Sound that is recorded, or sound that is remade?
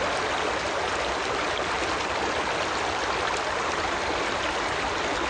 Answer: recorded